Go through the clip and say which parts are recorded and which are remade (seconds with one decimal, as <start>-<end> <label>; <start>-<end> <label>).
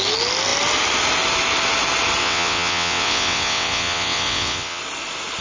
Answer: 0.0-2.2 recorded; 2.2-4.8 remade; 4.8-5.4 recorded